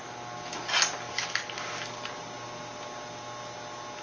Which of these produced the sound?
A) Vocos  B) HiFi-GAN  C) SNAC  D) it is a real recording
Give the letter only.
D